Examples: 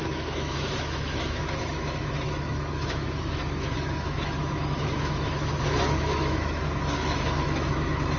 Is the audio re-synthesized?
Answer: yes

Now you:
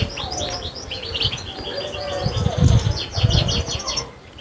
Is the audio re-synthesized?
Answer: no